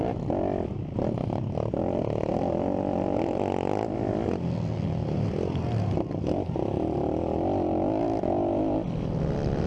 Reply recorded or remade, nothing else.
recorded